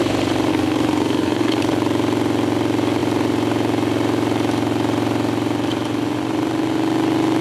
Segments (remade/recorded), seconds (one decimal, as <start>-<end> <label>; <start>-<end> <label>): 0.0-0.5 recorded; 0.5-1.6 remade; 1.6-7.4 recorded